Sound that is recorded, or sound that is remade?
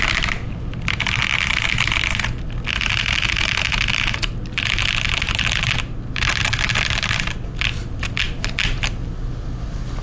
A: recorded